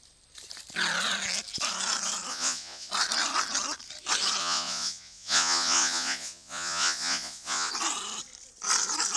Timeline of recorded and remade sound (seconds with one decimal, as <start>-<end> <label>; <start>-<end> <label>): 0.0-2.3 recorded; 2.3-2.9 remade; 2.9-4.4 recorded; 4.4-7.7 remade; 7.7-9.2 recorded